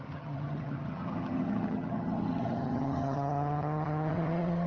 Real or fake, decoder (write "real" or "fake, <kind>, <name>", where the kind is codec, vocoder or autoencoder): fake, vocoder, HiFi-GAN